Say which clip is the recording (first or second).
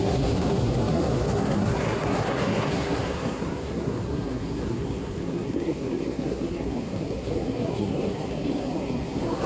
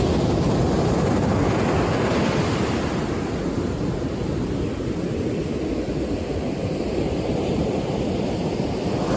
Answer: second